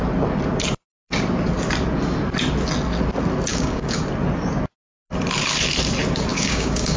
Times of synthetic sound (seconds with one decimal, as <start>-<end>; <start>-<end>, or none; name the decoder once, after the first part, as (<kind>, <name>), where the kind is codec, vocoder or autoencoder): 3.5-4.0 (codec, DAC); 6.3-7.0